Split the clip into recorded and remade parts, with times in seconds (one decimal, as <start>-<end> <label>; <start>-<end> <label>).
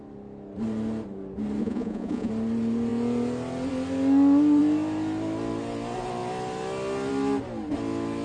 0.0-1.6 recorded; 1.6-2.3 remade; 2.3-8.2 recorded